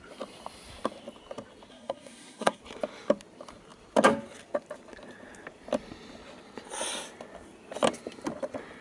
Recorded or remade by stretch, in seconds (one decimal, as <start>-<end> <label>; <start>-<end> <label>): 0.0-1.7 recorded; 1.7-2.6 remade; 2.6-8.8 recorded